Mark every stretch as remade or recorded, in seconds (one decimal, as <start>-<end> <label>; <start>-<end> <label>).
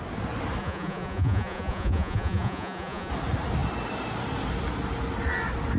0.0-0.6 recorded; 0.6-3.1 remade; 3.1-5.8 recorded